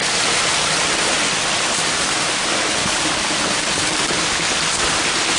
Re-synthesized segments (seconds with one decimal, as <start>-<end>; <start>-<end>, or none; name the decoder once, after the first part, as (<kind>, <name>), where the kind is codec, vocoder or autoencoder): 2.8-3.3 (codec, DAC)